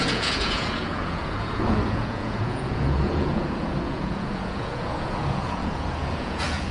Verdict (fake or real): fake